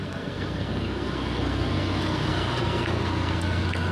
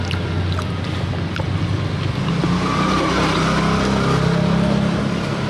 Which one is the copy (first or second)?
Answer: first